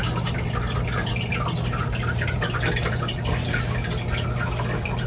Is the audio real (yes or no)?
yes